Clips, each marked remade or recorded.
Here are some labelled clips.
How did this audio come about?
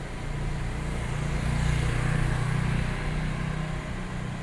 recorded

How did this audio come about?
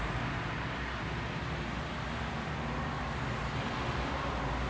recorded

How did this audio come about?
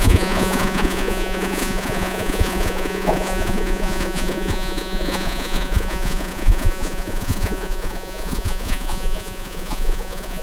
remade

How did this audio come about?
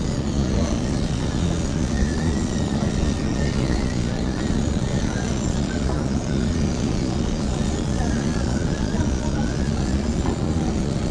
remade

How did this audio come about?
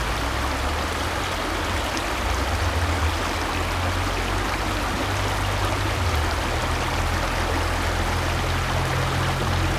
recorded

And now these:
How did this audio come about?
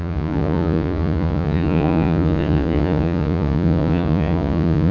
remade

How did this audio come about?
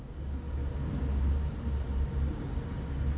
recorded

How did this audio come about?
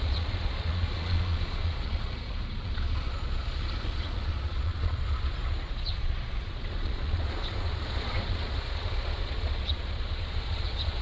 remade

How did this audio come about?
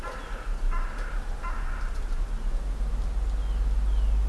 recorded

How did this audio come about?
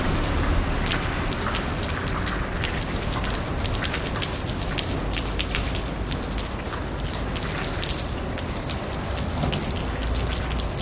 recorded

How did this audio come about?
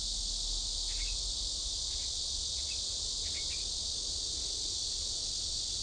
recorded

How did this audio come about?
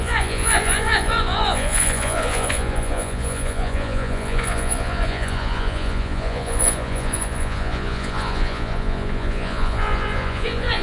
remade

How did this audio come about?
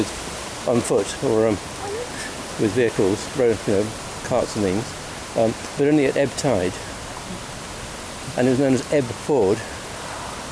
recorded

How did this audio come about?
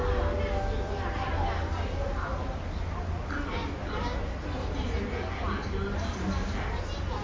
recorded